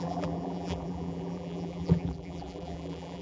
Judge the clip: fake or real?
fake